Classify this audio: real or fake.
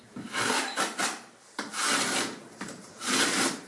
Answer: fake